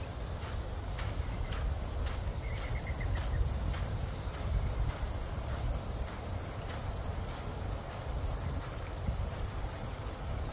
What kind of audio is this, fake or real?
real